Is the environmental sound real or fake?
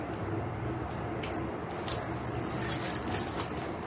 real